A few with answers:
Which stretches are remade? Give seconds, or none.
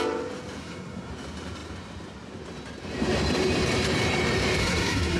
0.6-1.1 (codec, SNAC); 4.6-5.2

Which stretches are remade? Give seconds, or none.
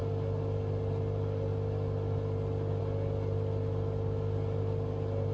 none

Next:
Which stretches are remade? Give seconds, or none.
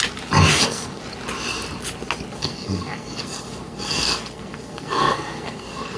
0.5-1.0 (codec, SNAC); 2.3-6.0